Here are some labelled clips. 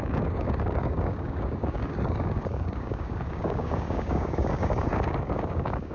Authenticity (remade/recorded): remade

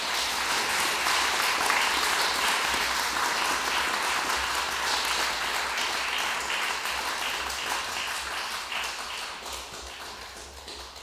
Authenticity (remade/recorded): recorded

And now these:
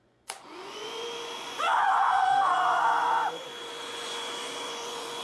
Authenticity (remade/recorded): remade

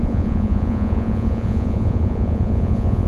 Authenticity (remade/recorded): remade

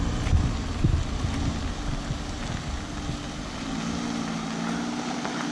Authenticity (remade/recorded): recorded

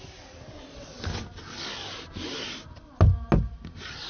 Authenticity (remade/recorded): recorded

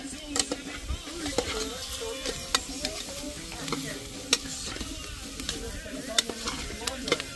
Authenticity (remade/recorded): recorded